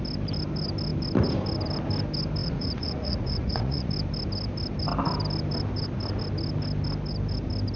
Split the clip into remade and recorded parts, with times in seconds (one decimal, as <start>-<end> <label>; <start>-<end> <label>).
0.0-2.4 recorded; 2.4-3.9 remade; 3.9-7.8 recorded